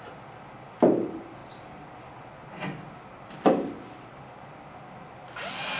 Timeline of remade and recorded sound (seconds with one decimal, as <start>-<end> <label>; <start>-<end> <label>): 0.0-5.8 recorded